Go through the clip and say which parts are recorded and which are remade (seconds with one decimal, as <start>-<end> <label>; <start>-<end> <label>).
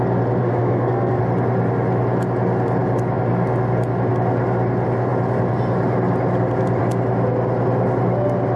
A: 0.0-0.4 recorded; 0.4-1.2 remade; 1.2-8.6 recorded